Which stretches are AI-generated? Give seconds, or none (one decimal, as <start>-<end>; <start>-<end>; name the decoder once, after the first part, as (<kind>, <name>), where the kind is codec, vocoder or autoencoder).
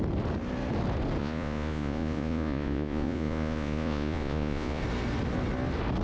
1.2-4.8 (vocoder, Vocos)